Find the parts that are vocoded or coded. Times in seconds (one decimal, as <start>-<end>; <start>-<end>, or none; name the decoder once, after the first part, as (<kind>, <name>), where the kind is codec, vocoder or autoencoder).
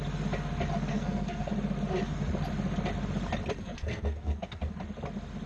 0.9-1.5 (codec, SNAC); 3.6-4.7